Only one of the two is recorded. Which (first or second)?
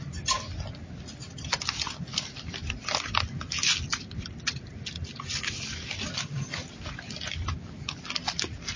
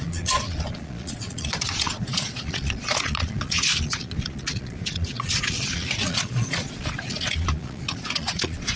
first